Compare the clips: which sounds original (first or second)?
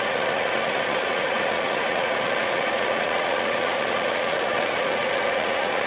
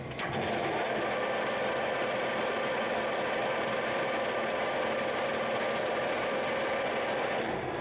second